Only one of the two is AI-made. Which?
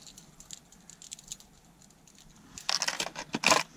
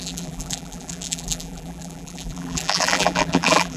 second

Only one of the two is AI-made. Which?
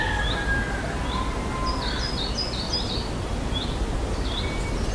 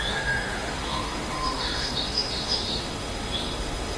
second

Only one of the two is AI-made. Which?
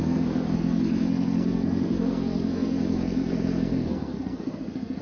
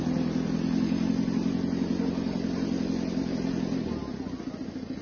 first